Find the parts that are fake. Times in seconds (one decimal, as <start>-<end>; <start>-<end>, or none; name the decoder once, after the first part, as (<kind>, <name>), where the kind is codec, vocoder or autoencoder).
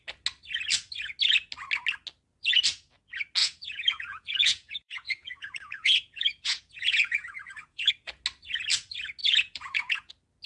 3.4-7.9 (vocoder, Vocos); 9.2-10.1